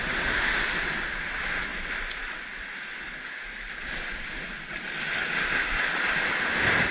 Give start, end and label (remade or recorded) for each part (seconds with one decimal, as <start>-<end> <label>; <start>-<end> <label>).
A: 0.0-6.9 recorded